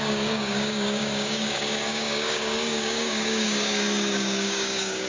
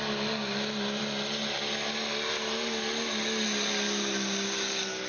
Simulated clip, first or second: first